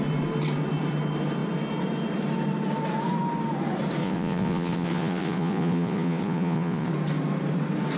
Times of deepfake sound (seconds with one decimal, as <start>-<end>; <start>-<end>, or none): 4.0-6.9

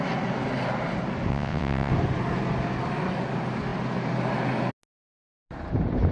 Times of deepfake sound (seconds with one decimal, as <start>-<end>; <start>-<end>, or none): 1.3-1.9

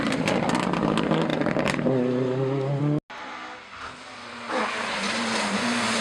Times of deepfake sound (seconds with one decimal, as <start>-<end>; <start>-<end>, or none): none

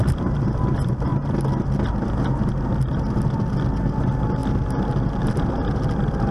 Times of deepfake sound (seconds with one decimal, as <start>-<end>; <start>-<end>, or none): 0.0-1.1; 3.9-4.4; 5.2-6.3

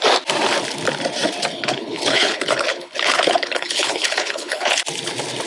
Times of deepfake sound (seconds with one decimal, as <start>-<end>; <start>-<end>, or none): 1.5-4.8

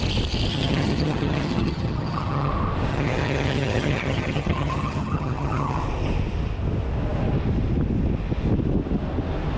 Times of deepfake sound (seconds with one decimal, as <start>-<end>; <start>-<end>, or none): 0.5-2.5; 2.9-5.8

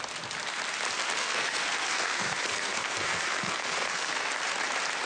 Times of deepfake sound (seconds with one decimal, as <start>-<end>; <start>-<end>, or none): 1.2-4.3